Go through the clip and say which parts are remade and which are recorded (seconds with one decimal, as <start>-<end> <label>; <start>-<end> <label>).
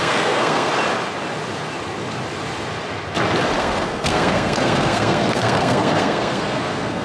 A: 0.0-0.7 remade; 0.7-3.6 recorded; 3.6-7.0 remade